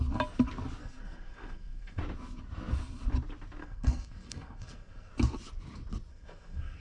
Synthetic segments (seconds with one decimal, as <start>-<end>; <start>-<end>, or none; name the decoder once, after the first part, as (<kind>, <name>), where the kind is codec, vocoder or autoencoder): 0.8-2.0 (codec, SNAC); 3.6-5.1; 6.1-6.8